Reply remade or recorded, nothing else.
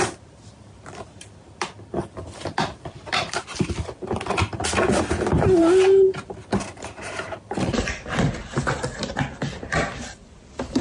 remade